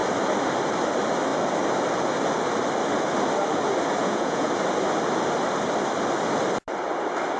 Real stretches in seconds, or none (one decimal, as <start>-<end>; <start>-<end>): 0.0-4.0; 4.5-7.4